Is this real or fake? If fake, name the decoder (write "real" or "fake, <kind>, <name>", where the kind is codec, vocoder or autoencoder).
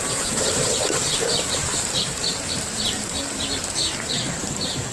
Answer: fake, vocoder, BigVGAN v2